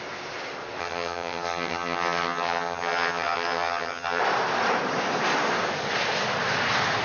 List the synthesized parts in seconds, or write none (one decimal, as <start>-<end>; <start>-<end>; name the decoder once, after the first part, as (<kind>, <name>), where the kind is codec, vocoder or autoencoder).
0.8-4.2 (vocoder, HiFi-GAN)